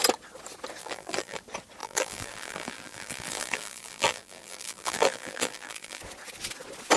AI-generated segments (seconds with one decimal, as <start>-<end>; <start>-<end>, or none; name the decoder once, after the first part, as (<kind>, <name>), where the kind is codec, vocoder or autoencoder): 0.8-1.4 (vocoder, BigVGAN v2); 1.8-6.0